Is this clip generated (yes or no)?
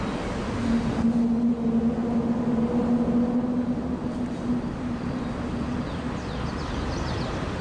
no